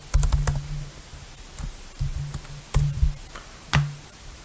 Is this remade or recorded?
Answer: recorded